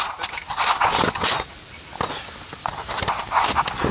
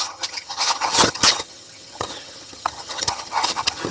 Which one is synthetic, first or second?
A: second